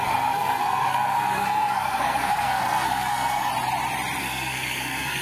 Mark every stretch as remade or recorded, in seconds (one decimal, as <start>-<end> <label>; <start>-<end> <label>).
0.0-3.5 remade; 3.5-4.2 recorded; 4.2-5.2 remade